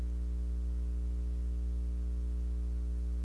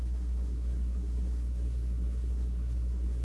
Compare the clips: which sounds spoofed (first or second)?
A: second